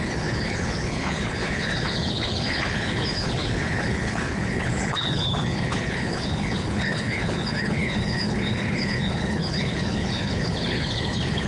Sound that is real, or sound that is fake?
fake